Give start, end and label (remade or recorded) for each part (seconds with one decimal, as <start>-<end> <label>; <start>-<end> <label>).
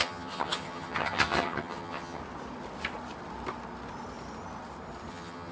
0.0-2.2 remade; 2.2-5.1 recorded; 5.1-5.5 remade